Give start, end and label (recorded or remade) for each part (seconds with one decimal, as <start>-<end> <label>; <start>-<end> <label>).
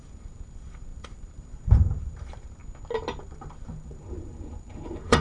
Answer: 0.0-2.6 remade; 2.6-3.2 recorded; 3.2-5.2 remade